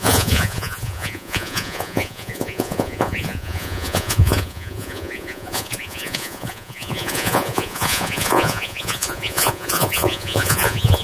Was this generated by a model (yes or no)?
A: yes